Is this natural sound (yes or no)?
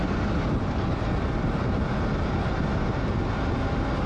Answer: yes